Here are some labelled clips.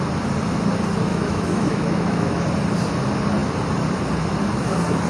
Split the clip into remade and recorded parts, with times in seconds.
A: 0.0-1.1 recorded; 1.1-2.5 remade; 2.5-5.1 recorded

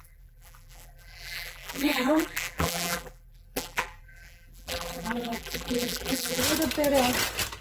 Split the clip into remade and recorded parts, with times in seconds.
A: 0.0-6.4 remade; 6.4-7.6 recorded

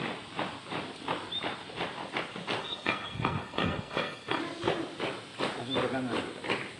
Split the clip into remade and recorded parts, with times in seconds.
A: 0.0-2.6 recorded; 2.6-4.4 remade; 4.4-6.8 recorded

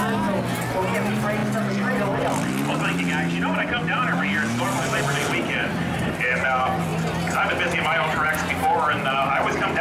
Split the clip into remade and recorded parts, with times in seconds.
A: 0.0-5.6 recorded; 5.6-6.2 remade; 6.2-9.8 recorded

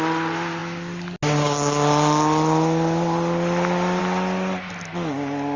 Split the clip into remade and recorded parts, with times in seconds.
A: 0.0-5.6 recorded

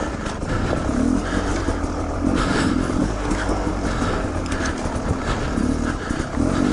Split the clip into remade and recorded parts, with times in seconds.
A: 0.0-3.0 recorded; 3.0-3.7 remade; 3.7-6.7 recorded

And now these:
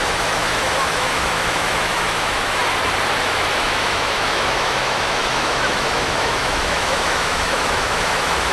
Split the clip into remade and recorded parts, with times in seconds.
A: 0.0-2.6 remade; 2.6-3.2 recorded; 3.2-8.5 remade